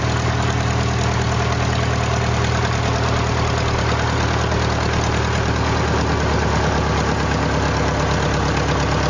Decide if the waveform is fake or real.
real